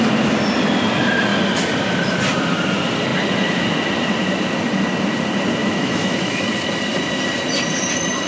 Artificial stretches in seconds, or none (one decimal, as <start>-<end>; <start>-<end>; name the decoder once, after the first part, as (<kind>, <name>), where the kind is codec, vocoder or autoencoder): 5.6-6.4 (autoencoder, DAC-VAE)